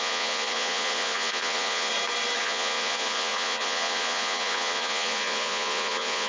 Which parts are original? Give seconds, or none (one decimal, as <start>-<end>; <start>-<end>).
1.9-2.4